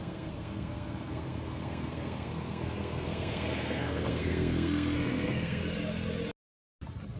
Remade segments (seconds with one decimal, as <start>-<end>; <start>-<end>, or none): 0.0-5.6